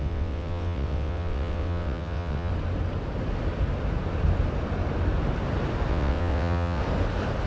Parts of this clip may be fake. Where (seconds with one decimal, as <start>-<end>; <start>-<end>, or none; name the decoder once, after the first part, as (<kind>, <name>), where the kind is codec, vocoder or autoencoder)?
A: 0.0-2.5 (vocoder, WaveNeXt); 5.9-6.8

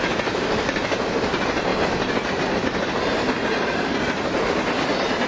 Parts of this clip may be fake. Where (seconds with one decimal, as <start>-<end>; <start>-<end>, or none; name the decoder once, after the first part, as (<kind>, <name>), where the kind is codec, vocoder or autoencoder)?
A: 0.0-5.3 (vocoder, BigVGAN v2)

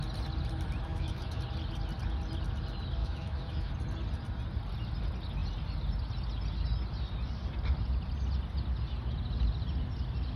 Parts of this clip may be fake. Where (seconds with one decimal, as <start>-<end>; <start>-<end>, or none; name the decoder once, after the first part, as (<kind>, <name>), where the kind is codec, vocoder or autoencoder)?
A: 0.9-1.4 (autoencoder, DAC-VAE); 3.0-3.7

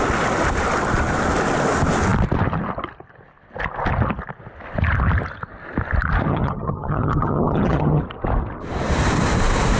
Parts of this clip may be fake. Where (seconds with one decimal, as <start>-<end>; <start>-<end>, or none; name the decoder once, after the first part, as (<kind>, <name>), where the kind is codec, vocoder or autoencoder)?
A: 6.3-8.0 (vocoder, HiFi-GAN)

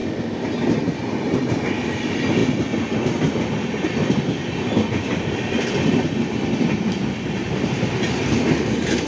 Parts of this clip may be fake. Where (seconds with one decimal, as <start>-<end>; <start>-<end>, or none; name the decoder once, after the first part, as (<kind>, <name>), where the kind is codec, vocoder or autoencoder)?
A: 1.6-2.4 (vocoder, BigVGAN v2); 3.5-9.1

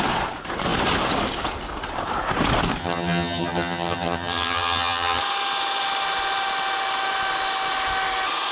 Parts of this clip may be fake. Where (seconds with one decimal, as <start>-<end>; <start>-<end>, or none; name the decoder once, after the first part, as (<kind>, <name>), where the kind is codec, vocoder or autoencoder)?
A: 2.8-5.2 (vocoder, HiFi-GAN)

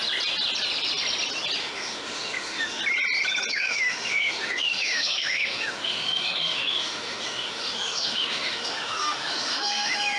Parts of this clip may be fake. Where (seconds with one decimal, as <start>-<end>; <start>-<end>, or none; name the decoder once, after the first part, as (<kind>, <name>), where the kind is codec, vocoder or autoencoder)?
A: 1.6-2.8 (autoencoder, DAC-VAE); 3.5-10.2

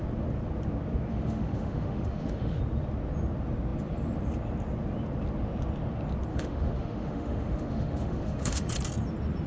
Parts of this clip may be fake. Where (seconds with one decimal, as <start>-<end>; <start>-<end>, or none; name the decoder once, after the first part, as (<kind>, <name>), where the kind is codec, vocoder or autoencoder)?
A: 1.1-2.6 (autoencoder, DAC-VAE); 6.3-8.7